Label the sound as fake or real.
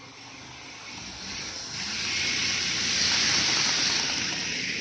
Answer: real